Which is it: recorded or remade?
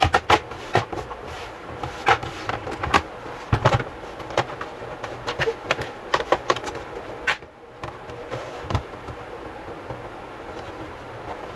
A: recorded